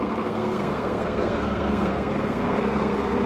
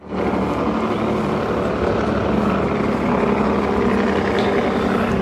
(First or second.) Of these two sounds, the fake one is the first